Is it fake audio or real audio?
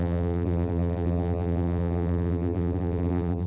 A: fake